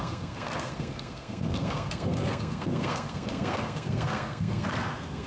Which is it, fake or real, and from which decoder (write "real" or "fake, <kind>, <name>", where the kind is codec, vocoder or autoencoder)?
fake, codec, SNAC